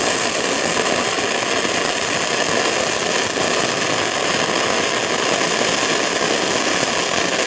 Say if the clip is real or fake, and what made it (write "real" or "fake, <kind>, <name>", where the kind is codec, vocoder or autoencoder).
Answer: real